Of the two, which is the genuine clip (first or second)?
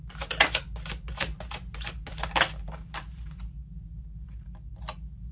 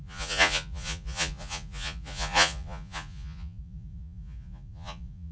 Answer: first